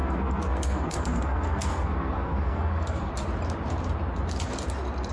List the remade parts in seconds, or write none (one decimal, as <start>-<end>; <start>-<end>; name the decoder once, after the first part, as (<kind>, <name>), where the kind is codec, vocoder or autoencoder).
0.0-3.1 (codec, SNAC)

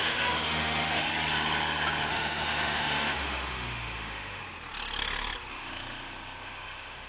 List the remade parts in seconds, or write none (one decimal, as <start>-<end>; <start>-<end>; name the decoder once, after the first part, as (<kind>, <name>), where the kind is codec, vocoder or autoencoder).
0.0-1.1 (autoencoder, DAC-VAE); 2.1-4.4; 5.5-7.1